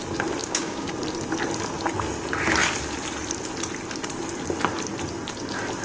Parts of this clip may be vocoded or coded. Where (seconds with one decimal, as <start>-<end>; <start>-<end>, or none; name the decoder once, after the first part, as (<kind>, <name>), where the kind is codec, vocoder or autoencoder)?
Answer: 0.4-0.9 (codec, DAC)